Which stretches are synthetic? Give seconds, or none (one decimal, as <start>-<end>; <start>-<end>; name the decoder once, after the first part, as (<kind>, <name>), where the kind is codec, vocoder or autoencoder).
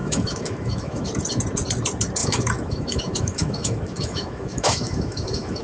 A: 0.0-1.2 (autoencoder, DAC-VAE); 2.2-5.6